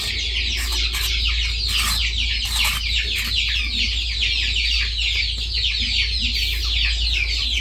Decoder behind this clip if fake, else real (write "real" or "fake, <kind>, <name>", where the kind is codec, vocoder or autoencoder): real